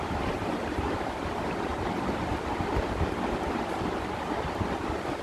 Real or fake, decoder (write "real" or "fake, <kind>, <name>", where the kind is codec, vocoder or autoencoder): real